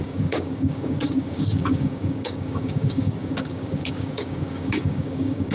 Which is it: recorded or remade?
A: remade